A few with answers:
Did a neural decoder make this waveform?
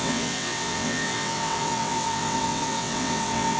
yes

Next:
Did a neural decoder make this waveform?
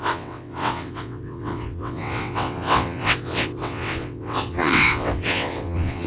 yes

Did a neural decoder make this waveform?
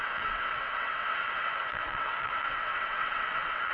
yes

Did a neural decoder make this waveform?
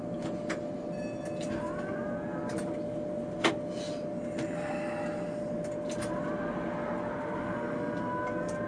no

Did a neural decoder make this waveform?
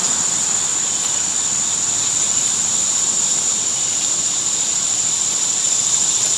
no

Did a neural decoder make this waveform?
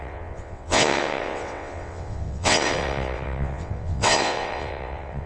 yes